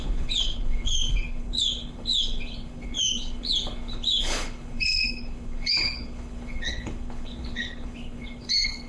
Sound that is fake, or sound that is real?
fake